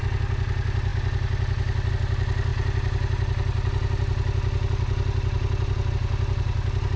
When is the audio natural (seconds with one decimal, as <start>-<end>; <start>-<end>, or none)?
0.0-7.0